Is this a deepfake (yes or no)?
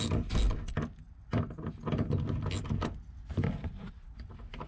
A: no